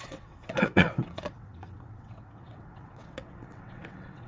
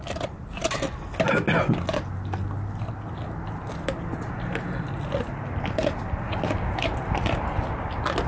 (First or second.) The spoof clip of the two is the first